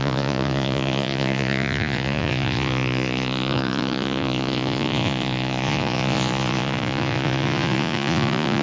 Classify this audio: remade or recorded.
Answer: remade